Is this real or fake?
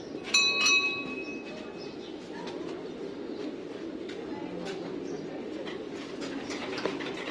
real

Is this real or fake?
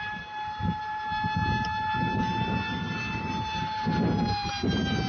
real